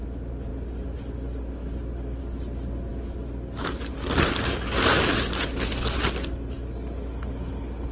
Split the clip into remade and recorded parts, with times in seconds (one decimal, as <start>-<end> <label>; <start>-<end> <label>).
0.0-7.9 recorded